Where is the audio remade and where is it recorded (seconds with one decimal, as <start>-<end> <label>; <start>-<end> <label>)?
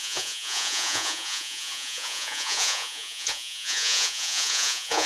0.0-5.1 remade